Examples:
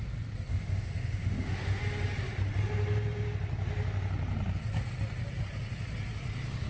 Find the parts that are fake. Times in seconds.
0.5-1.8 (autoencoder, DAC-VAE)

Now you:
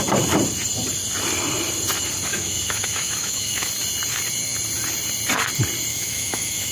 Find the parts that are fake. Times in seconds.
2.3-3.7 (autoencoder, DAC-VAE); 5.9-6.7

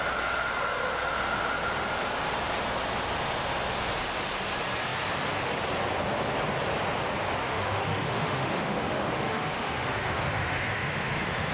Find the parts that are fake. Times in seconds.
7.4-11.5 (autoencoder, DAC-VAE)

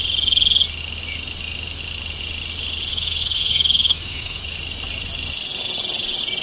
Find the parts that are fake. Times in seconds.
2.9-4.4 (autoencoder, DAC-VAE)

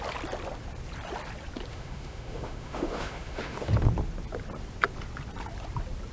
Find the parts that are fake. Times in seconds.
1.7-3.7 (autoencoder, DAC-VAE)

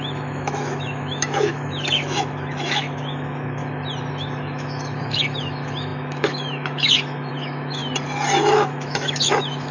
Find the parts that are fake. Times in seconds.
0.0-3.6 (autoencoder, DAC-VAE); 4.1-7.8; 8.4-9.7

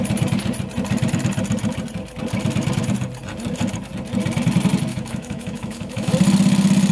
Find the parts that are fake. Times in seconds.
4.9-6.1 (autoencoder, DAC-VAE)

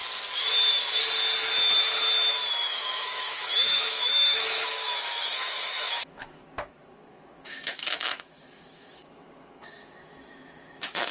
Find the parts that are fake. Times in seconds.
2.5-11.1 (autoencoder, DAC-VAE)